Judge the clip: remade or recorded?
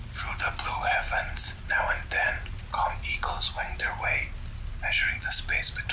recorded